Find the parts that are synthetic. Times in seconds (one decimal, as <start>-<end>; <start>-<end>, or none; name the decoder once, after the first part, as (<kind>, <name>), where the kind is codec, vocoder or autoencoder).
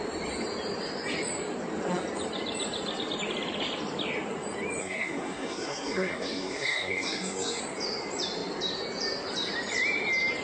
4.8-7.6 (codec, SNAC)